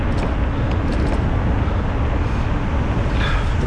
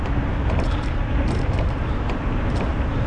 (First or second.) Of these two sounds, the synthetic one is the second